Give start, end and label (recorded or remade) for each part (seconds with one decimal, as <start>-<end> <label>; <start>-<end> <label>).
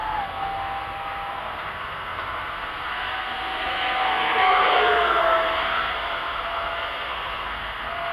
0.0-8.1 remade